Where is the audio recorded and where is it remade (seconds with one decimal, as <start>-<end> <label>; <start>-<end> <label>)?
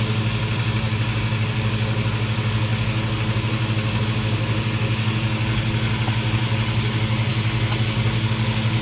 0.0-8.8 recorded